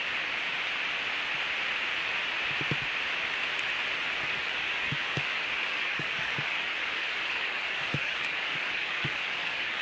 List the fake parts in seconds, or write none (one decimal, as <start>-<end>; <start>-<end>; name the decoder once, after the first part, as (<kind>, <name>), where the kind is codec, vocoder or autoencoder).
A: 4.2-9.8 (codec, DAC)